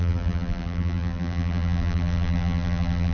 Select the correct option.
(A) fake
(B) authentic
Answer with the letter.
A